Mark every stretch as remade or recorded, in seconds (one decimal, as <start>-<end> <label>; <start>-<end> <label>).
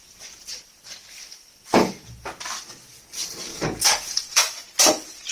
0.0-3.5 recorded; 3.5-4.4 remade; 4.4-5.3 recorded